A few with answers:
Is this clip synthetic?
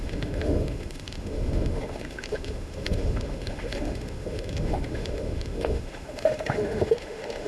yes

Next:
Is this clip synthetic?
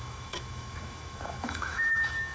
yes